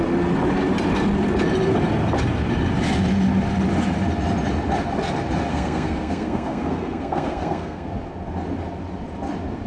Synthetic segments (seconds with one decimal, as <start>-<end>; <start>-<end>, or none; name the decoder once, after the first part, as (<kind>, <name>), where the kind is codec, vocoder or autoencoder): 5.5-7.9 (codec, SNAC)